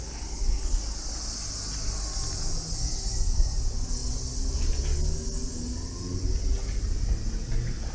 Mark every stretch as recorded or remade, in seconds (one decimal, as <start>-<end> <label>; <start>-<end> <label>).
0.0-7.9 recorded